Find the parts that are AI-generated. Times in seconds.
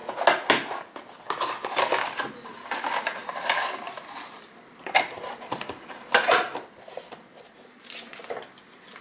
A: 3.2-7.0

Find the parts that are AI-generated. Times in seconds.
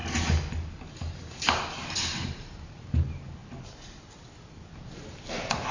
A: 0.9-3.4; 4.8-5.7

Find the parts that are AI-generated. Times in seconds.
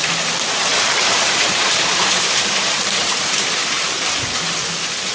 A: 0.7-3.8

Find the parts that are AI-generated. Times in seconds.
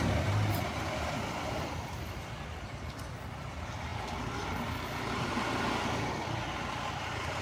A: none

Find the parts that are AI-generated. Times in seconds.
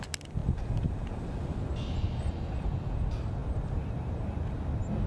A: none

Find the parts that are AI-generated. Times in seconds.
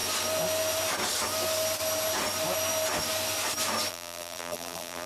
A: 3.9-5.1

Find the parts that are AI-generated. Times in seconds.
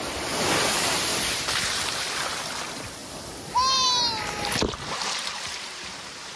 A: 0.0-6.4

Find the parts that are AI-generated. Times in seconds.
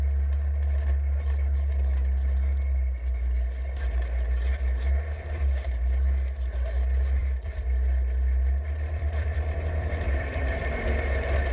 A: 7.2-11.5